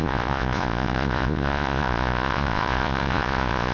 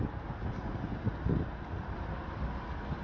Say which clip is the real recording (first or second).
second